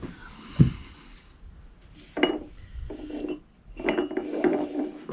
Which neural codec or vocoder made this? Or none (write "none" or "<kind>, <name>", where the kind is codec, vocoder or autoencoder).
none